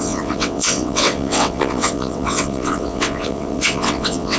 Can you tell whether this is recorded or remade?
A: remade